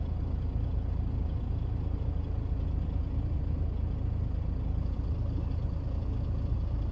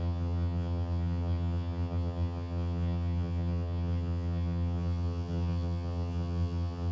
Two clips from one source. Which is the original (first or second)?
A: first